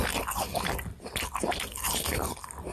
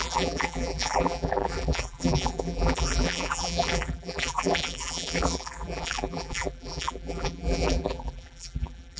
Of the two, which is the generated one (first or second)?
second